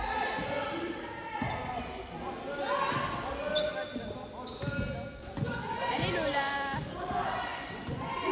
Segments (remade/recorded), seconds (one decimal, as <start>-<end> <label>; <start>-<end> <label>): 0.0-5.2 recorded; 5.2-5.9 remade; 5.9-7.5 recorded; 7.5-8.3 remade